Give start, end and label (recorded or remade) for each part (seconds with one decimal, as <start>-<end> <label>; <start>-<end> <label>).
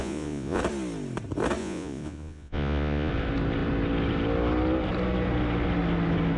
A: 0.0-0.6 remade; 0.6-1.6 recorded; 1.6-3.1 remade; 3.1-6.4 recorded